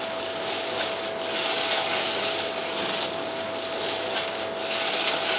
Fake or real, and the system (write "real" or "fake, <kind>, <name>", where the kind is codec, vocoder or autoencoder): fake, codec, DAC